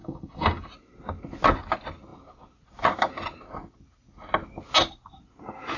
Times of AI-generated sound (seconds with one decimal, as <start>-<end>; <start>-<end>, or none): 0.0-0.7